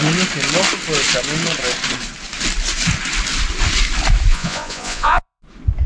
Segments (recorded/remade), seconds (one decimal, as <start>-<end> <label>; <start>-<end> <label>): 0.0-4.3 recorded; 4.3-5.4 remade; 5.4-5.9 recorded